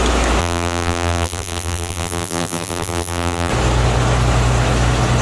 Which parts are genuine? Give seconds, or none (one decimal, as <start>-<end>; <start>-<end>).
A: 0.0-0.4; 3.5-5.2

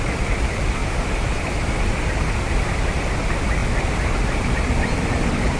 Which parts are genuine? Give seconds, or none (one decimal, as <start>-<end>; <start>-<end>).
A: 0.0-5.6

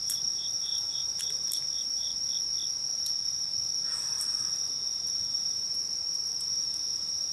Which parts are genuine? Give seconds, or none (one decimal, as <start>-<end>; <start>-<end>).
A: 2.1-4.9

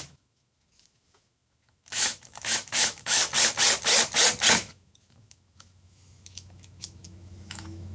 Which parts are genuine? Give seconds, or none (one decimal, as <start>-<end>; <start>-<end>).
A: 3.2-4.5